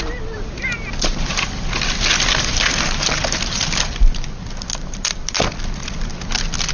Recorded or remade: recorded